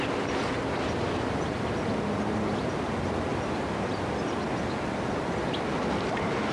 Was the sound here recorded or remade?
recorded